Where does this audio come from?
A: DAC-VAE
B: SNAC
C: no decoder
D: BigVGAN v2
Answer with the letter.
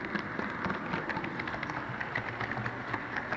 C